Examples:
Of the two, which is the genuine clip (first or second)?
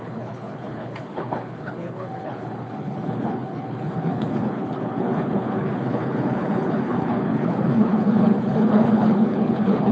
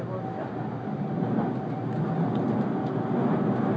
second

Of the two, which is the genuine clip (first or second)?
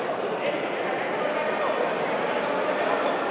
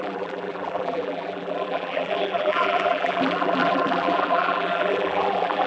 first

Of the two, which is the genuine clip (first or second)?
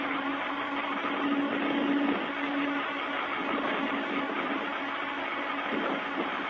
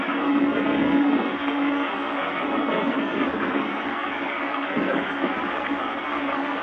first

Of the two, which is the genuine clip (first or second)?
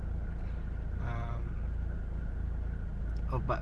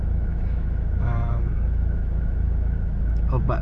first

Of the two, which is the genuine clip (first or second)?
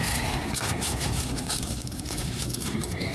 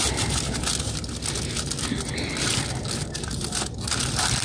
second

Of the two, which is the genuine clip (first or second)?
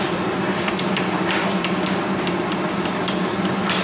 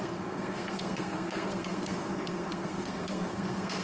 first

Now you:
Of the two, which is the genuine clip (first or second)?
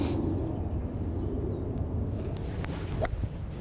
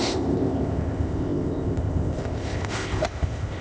first